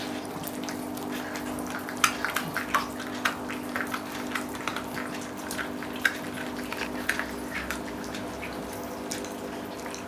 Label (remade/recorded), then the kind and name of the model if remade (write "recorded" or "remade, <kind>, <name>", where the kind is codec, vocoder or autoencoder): recorded